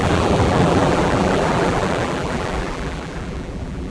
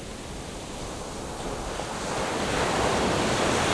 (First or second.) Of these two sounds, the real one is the second